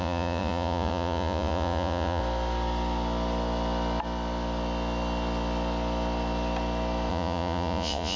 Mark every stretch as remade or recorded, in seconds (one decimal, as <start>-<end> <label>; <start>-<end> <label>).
0.0-2.2 remade; 2.2-7.1 recorded; 7.1-8.2 remade